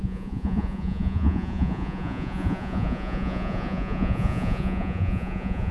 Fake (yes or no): yes